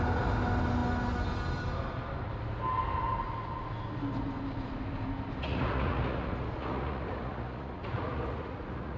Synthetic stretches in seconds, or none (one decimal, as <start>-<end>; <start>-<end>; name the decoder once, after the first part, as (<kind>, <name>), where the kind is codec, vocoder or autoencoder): 5.4-9.0 (vocoder, Vocos)